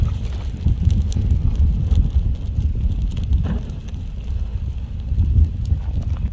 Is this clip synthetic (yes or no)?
no